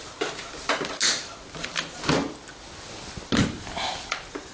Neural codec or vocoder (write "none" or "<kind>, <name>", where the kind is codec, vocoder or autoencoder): none